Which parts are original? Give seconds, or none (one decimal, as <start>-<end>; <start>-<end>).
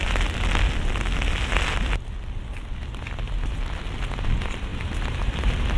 0.0-5.8